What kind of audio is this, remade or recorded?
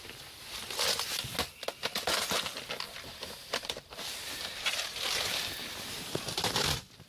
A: remade